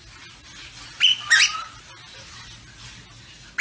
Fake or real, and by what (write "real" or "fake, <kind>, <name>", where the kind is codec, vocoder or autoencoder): real